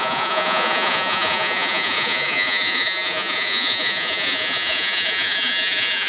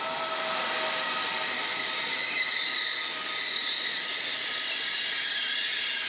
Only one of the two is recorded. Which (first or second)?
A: second